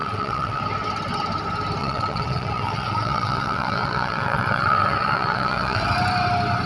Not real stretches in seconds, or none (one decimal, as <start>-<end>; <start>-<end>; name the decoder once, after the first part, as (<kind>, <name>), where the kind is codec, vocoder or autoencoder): 0.0-0.6 (vocoder, WaveNeXt); 1.8-5.8